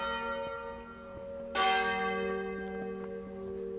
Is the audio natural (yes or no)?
yes